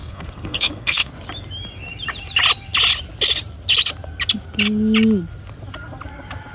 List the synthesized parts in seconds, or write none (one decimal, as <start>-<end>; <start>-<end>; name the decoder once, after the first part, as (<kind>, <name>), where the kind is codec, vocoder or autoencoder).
0.0-1.1 (codec, SNAC)